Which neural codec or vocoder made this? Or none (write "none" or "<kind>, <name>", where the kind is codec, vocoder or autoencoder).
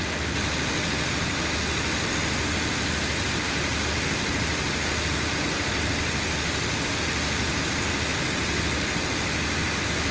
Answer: none